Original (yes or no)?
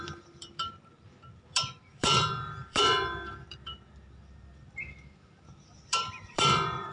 no